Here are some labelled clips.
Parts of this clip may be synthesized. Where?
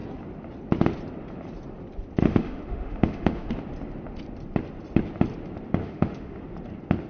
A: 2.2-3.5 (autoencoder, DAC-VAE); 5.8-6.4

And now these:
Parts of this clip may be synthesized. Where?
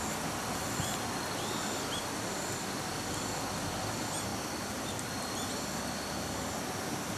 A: none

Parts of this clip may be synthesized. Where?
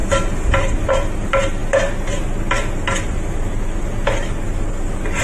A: none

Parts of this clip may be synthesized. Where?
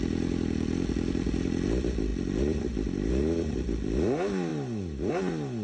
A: none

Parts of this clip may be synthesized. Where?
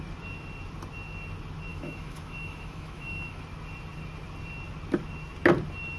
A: 1.7-3.4 (autoencoder, DAC-VAE)